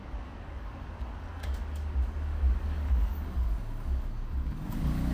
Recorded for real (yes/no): no